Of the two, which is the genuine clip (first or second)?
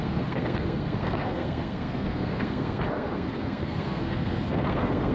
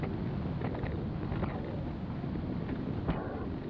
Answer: second